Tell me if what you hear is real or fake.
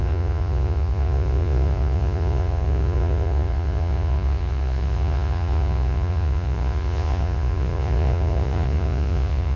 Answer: fake